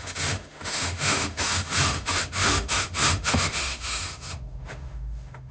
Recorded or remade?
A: remade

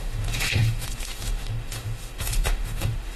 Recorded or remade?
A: remade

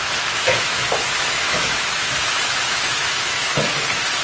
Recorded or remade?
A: remade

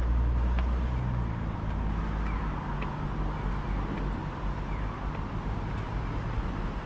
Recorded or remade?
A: recorded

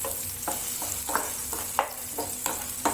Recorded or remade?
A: recorded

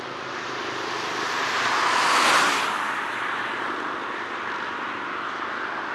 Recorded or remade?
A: recorded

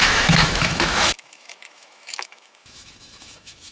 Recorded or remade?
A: remade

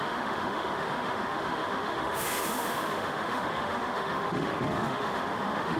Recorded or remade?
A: remade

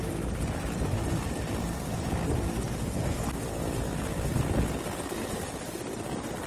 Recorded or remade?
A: recorded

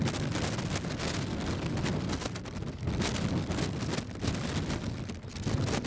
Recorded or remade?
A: recorded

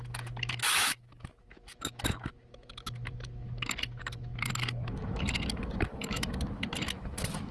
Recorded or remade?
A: remade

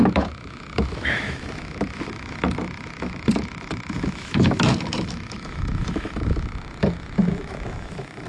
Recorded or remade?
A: remade